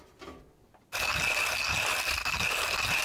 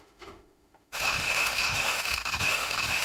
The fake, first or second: second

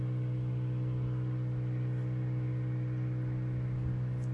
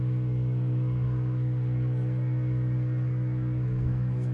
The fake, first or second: second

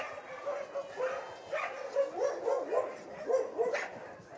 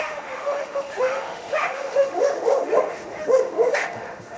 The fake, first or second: second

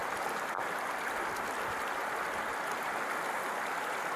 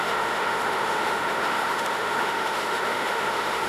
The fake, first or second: second